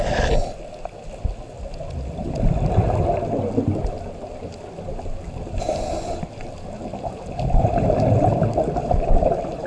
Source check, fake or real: real